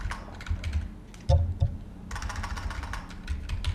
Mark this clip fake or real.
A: real